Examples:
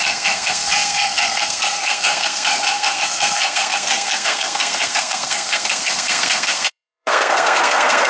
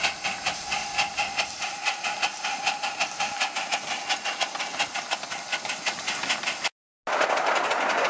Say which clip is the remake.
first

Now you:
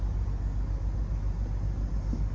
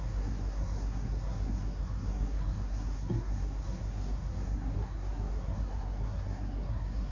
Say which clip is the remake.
second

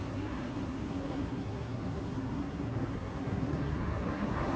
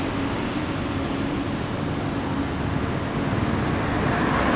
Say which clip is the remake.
first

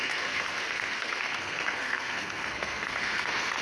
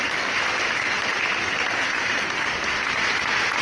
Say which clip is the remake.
first